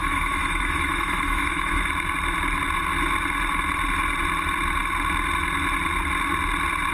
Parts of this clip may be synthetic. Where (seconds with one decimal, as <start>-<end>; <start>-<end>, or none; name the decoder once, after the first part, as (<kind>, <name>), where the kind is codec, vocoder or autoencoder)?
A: 0.0-1.8 (autoencoder, DAC-VAE)